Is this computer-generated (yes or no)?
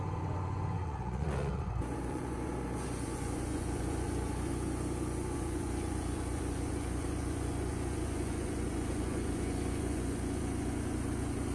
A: yes